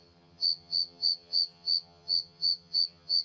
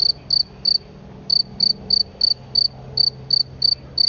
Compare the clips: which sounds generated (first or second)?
first